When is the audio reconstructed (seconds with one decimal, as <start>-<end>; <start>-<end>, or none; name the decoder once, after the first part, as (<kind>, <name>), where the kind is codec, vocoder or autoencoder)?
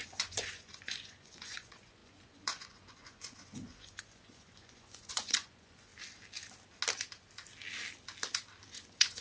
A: 0.0-5.9 (vocoder, Vocos); 8.7-9.2